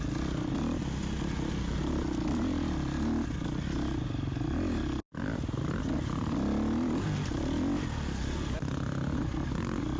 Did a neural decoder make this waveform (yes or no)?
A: no